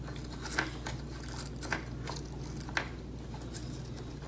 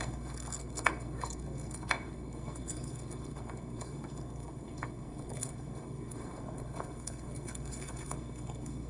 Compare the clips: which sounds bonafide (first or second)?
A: first